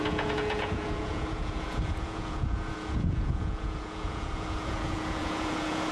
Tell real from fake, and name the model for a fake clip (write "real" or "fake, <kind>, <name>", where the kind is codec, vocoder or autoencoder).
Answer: fake, vocoder, Vocos